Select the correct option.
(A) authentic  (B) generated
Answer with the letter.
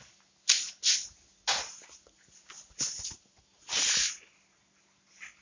A